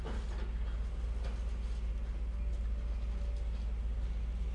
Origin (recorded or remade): recorded